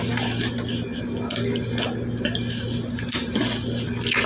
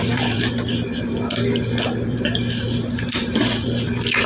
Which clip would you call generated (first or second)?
second